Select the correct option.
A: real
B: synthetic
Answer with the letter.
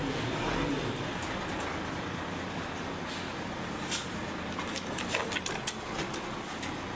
A